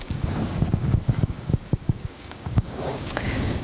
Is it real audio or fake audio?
fake